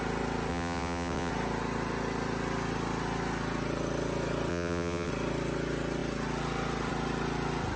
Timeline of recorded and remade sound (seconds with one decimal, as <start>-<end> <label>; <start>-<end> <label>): 0.0-0.5 recorded; 0.5-1.3 remade; 1.3-4.5 recorded; 4.5-5.1 remade; 5.1-7.8 recorded